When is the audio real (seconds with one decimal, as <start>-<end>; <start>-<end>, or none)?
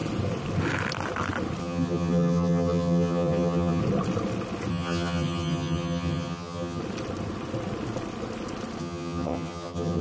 0.0-1.6; 3.8-4.7; 6.8-8.8